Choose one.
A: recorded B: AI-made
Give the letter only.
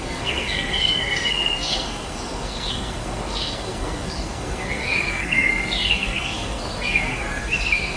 B